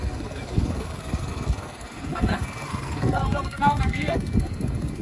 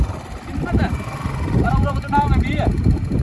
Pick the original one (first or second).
second